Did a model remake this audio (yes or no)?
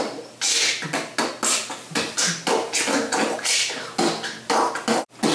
no